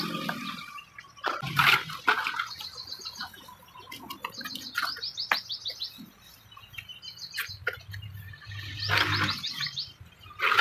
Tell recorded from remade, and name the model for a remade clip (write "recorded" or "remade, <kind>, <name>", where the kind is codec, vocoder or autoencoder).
recorded